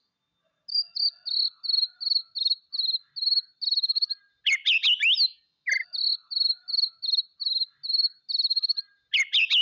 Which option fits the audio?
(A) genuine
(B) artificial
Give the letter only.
A